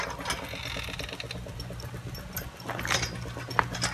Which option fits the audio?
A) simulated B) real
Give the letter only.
B